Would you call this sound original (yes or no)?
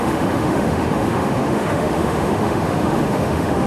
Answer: no